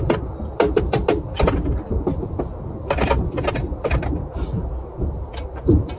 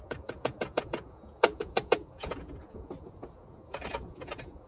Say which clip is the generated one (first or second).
second